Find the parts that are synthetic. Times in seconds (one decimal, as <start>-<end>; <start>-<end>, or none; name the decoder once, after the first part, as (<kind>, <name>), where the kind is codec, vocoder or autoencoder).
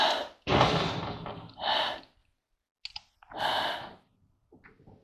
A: none